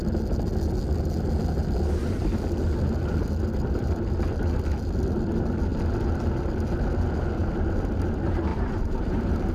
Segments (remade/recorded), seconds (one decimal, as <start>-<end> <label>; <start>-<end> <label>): 0.0-8.5 recorded; 8.5-9.5 remade